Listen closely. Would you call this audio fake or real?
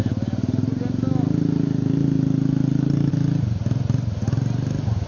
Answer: real